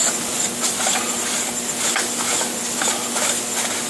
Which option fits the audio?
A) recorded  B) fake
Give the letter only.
A